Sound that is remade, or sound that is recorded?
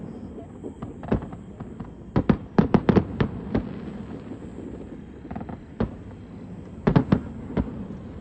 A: recorded